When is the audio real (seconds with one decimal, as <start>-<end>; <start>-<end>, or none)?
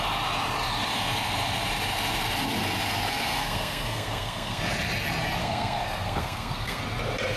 0.0-3.1; 4.6-5.4; 6.8-7.4